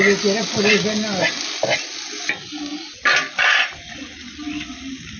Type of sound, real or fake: real